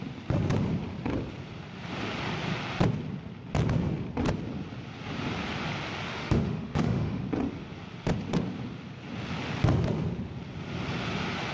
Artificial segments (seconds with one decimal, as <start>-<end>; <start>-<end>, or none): 6.1-7.2